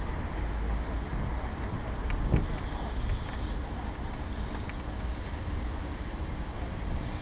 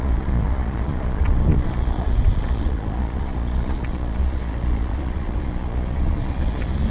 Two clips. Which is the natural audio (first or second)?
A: first